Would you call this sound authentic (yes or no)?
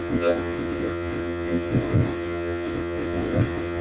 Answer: no